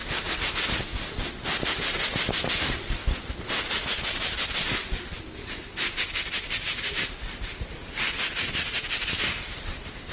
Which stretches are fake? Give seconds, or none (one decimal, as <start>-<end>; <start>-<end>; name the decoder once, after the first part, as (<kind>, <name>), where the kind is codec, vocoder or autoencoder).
none